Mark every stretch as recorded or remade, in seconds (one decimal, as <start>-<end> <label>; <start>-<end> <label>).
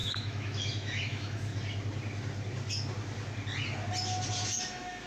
0.0-1.5 remade; 1.5-4.6 recorded; 4.6-5.1 remade